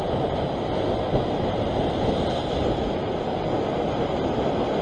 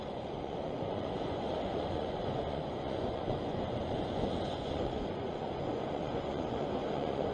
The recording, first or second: first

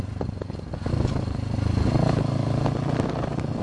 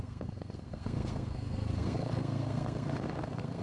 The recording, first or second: first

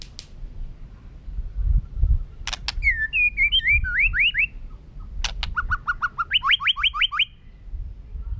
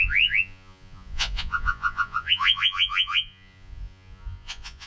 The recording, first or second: first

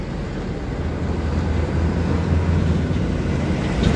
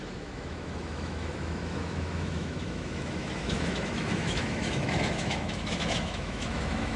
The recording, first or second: first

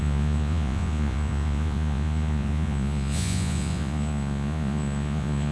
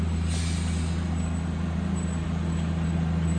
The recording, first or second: second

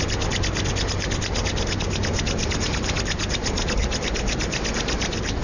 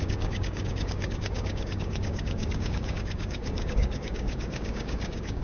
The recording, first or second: first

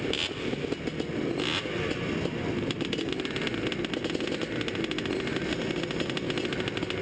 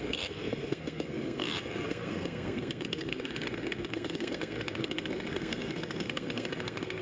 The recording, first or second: first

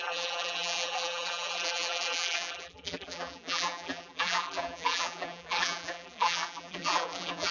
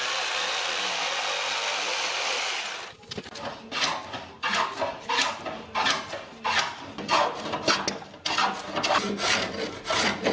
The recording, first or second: second